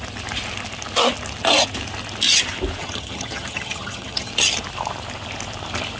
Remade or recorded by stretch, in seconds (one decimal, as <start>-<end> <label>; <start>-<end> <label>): 0.0-2.8 recorded; 2.8-4.3 remade; 4.3-6.0 recorded